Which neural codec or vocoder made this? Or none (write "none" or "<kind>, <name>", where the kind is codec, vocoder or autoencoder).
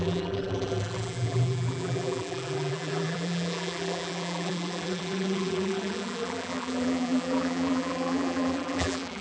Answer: vocoder, BigVGAN v2